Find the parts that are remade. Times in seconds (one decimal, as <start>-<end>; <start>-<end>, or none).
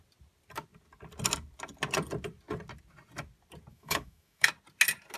3.7-4.5